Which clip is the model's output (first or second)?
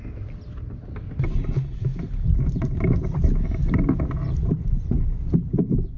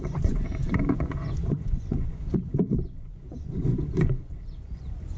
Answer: second